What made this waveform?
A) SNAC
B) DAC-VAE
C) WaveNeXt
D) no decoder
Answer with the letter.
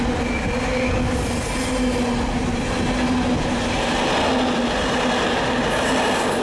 D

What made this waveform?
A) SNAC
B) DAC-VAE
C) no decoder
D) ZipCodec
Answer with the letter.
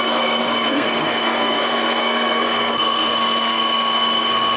A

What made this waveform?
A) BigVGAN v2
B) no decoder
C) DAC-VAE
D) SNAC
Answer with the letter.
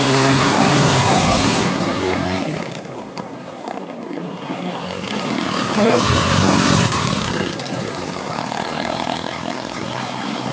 D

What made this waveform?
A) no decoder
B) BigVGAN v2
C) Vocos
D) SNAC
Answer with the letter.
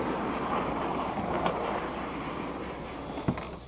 A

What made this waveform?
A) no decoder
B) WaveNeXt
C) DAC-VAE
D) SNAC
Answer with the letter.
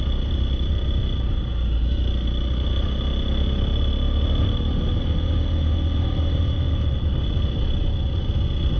A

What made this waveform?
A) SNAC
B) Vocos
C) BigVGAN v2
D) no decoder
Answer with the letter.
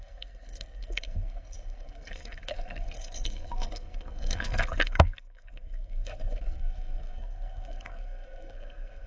A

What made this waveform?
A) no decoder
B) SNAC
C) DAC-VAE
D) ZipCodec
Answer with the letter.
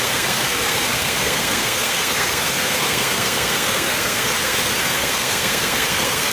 B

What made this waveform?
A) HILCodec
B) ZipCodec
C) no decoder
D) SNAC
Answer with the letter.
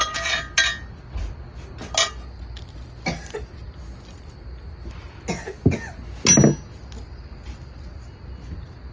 C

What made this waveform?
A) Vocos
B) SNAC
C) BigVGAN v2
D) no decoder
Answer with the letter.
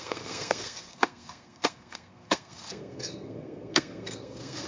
B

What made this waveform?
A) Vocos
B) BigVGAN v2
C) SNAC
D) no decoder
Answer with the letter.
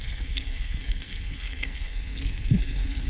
C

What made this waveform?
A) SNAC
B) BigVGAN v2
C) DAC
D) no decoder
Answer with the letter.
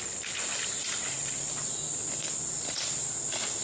D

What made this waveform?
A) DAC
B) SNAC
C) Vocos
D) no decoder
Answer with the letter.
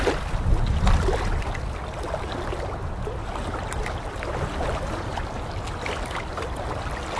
D